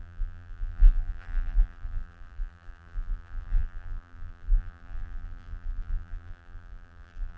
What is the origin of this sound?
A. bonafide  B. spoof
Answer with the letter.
B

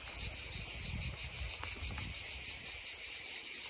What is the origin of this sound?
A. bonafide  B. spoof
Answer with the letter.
A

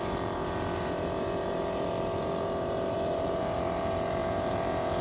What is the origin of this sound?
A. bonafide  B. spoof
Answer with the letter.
B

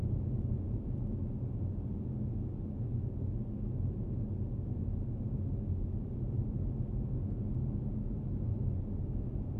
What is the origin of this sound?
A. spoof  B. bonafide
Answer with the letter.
B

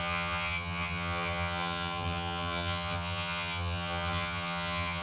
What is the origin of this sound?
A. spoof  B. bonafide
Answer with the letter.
A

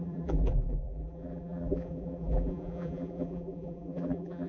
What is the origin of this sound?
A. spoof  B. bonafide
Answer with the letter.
A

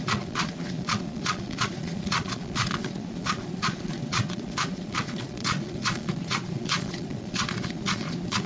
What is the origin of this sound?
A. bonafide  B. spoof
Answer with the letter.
B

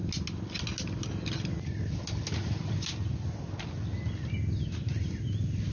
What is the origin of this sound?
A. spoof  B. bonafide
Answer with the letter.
B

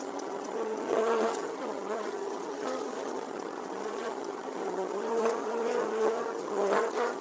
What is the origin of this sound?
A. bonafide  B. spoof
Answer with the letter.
B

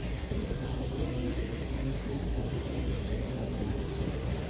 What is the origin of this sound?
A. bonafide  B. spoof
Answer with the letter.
B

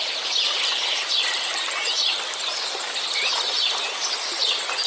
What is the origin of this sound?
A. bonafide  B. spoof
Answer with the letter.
A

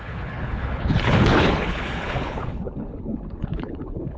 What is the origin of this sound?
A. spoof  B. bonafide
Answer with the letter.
A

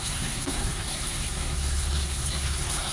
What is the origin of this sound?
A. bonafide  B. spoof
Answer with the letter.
B